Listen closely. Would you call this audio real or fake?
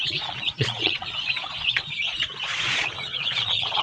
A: fake